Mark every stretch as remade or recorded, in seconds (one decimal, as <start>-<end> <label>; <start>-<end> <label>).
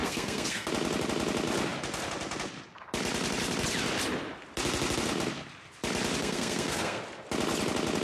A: 0.0-0.7 remade; 0.7-6.2 recorded; 6.2-7.0 remade; 7.0-8.0 recorded